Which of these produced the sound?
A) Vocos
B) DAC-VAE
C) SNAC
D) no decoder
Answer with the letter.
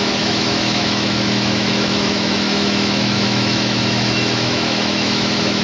B